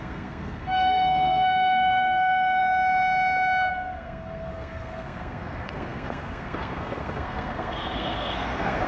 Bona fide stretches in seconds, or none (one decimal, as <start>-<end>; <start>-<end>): 2.6-3.7